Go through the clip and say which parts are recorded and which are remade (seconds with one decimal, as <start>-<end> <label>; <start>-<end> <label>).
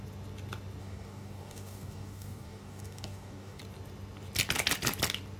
0.0-0.8 recorded; 0.8-3.6 remade; 3.6-5.4 recorded